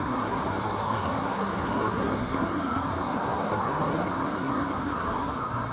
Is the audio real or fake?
fake